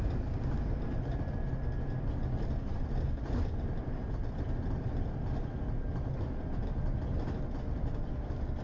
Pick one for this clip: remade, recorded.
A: recorded